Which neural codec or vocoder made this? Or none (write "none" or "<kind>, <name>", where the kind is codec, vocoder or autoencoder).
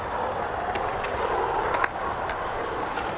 none